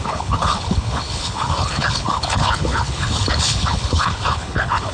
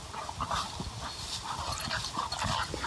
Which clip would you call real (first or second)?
second